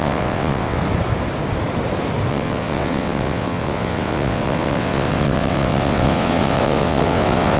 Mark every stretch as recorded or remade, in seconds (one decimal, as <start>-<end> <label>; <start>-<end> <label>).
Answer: 0.0-0.8 remade; 0.8-2.3 recorded; 2.3-7.6 remade